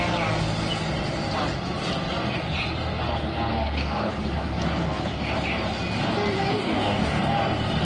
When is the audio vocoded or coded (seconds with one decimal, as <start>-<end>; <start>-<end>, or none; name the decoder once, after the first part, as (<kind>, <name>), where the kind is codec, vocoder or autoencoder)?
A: 3.5-4.1 (codec, DAC); 6.5-7.2